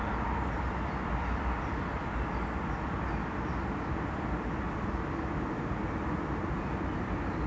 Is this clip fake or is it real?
real